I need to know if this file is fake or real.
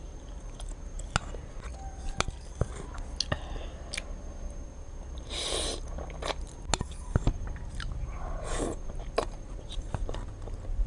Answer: real